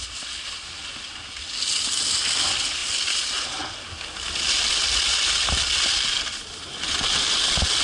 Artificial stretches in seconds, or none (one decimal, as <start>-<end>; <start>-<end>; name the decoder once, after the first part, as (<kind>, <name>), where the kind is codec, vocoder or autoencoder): none